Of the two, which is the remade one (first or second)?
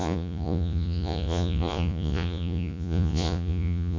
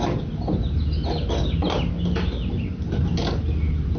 first